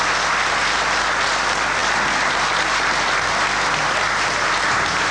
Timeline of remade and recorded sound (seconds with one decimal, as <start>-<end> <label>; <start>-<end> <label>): 0.0-5.1 recorded